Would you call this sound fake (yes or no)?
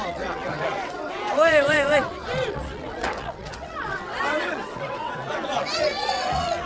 yes